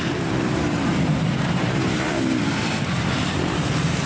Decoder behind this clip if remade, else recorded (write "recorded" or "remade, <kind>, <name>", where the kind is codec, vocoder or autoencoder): remade, vocoder, BigVGAN v2